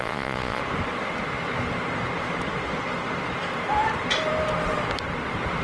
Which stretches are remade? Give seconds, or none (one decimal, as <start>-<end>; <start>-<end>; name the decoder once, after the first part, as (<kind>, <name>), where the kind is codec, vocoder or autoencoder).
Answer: 0.0-0.6 (vocoder, Vocos)